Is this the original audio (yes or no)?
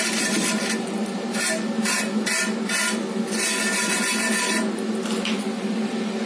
yes